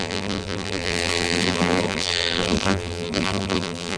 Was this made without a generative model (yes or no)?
no